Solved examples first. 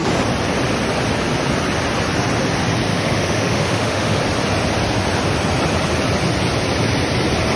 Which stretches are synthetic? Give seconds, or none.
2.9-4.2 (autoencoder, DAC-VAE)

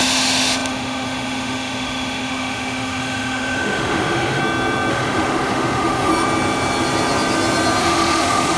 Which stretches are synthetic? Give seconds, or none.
0.0-4.4 (autoencoder, DAC-VAE); 4.9-6.1; 7.8-8.6

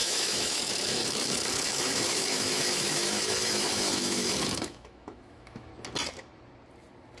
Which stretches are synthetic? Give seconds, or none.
0.0-5.7 (autoencoder, DAC-VAE)

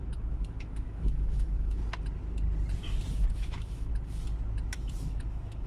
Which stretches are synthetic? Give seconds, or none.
0.0-1.8 (autoencoder, DAC-VAE); 3.3-3.9; 5.0-5.7

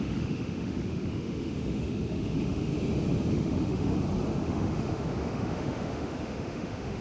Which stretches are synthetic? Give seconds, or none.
0.0-2.7 (autoencoder, DAC-VAE); 3.3-3.9; 4.4-7.0